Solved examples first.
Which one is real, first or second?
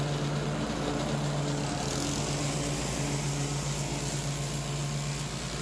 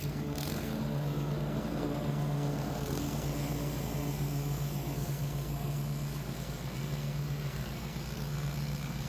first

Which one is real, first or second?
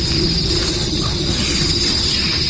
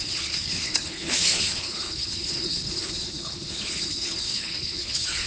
first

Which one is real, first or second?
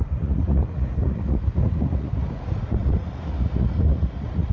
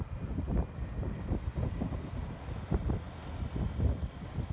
second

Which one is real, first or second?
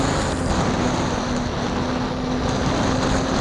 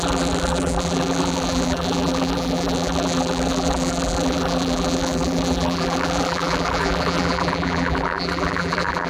first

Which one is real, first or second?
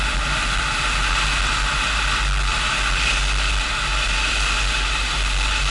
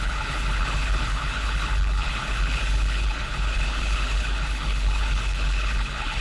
first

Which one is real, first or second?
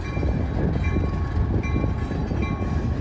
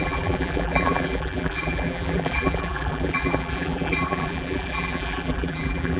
first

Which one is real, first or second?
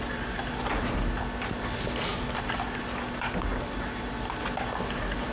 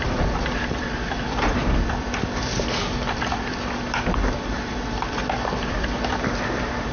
first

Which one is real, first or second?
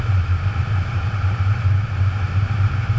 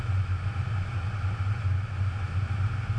second